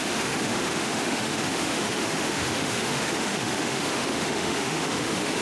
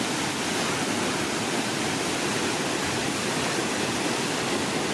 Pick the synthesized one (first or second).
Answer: first